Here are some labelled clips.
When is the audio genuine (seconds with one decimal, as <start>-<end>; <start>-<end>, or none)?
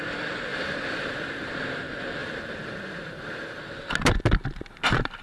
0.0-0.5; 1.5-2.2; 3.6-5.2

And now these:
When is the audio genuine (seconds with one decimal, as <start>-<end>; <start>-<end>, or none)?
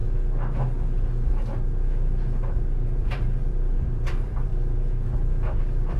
0.0-3.0; 4.5-5.6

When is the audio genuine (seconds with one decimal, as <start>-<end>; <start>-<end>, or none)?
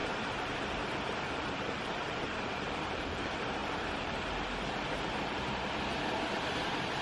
none